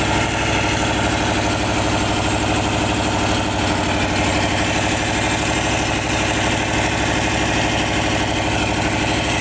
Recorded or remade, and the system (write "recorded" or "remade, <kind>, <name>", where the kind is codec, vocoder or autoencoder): recorded